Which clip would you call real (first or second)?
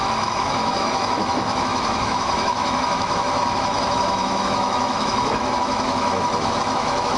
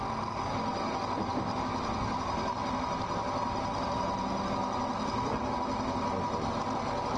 second